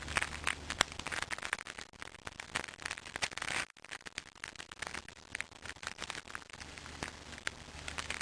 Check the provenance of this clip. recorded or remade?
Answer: recorded